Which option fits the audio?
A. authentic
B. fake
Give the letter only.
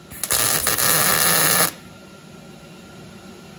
A